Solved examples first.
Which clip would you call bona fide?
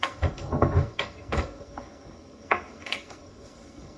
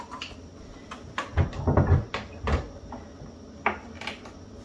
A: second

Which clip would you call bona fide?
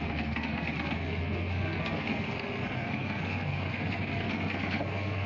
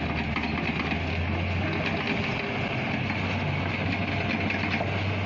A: second